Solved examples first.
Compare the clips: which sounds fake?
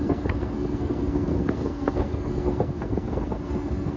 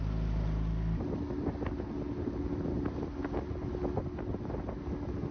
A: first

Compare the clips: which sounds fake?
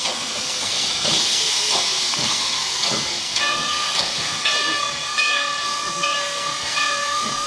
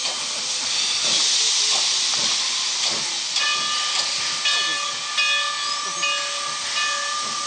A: first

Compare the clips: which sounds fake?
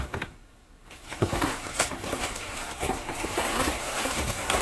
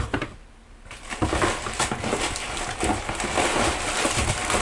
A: first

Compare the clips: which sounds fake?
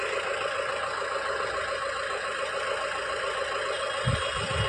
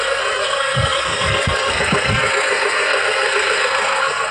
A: second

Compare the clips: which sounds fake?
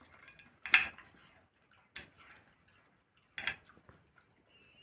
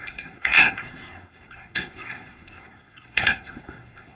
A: second